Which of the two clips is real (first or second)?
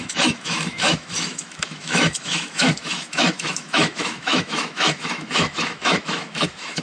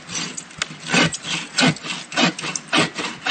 second